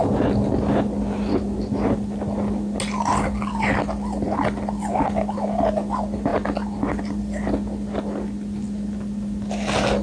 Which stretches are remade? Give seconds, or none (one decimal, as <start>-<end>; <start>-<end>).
none

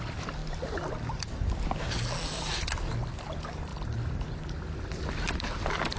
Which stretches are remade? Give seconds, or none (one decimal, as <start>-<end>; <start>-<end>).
none

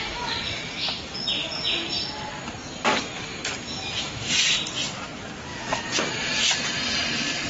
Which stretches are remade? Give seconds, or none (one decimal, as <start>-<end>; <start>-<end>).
none